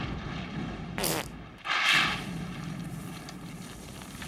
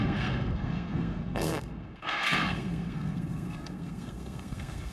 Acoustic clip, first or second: first